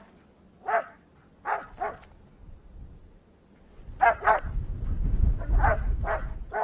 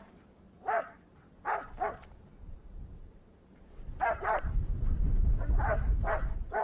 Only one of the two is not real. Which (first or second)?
second